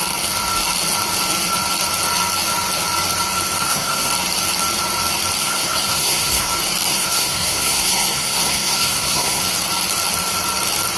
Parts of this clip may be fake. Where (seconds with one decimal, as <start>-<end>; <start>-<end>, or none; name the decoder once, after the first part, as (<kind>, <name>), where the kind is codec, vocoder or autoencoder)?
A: 3.6-4.1 (codec, SNAC); 5.4-6.5; 6.9-9.4